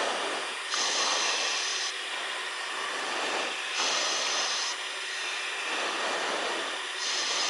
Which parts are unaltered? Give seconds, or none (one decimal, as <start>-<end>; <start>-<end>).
0.0-1.7; 4.3-7.5